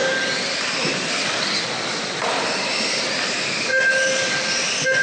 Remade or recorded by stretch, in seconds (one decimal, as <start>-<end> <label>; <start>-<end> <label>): 0.0-5.0 recorded